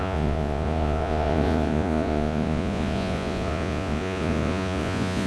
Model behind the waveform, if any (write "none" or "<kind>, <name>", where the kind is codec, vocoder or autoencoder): vocoder, Vocos